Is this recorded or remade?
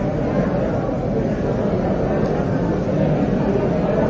recorded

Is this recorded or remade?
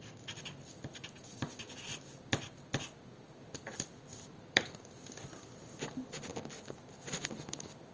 recorded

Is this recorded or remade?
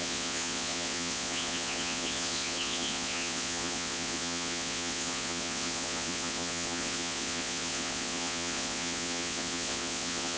remade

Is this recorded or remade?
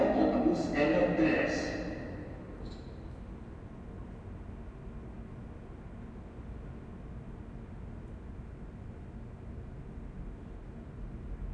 recorded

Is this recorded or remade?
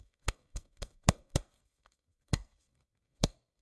remade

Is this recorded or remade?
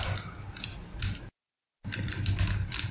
recorded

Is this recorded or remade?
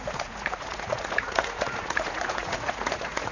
remade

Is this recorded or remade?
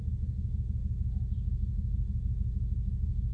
recorded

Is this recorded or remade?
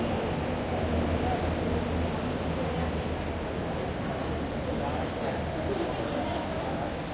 recorded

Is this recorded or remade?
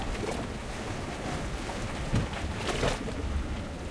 recorded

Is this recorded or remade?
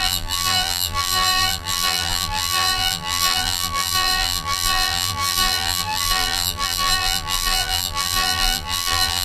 remade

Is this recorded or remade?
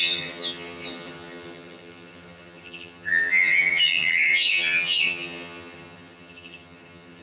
remade